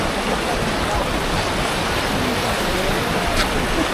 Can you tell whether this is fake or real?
real